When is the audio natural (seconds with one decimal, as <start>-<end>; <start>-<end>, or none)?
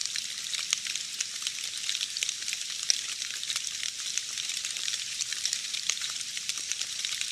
0.0-4.4